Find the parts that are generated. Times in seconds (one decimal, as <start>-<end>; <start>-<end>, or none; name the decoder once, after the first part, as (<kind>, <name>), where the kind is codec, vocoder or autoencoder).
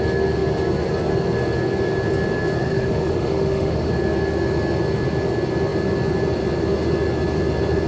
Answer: 2.6-3.9 (autoencoder, DAC-VAE)